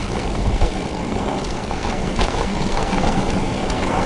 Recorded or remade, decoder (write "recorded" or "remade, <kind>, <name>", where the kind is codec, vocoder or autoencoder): remade, codec, SNAC